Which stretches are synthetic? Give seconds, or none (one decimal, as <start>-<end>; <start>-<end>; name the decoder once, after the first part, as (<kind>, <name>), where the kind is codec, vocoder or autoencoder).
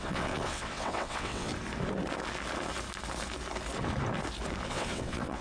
0.0-1.5 (vocoder, WaveNeXt); 4.7-5.4